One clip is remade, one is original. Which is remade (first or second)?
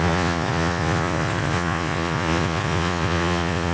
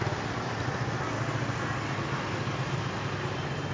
first